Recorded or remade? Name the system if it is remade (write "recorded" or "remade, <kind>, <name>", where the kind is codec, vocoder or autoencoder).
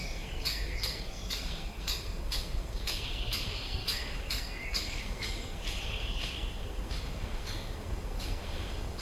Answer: remade, codec, SNAC